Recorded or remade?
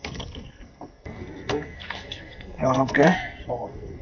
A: remade